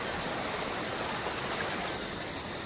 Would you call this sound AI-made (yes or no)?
no